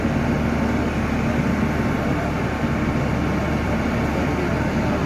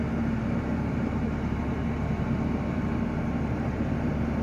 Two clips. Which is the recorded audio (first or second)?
first